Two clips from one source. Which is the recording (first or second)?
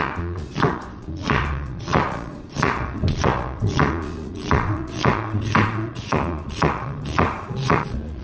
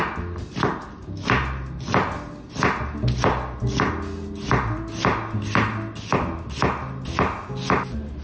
second